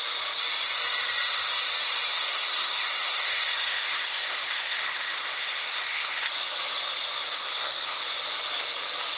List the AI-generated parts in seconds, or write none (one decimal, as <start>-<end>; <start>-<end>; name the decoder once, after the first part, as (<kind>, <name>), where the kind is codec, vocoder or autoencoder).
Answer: 2.1-6.3 (codec, SNAC); 7.4-8.0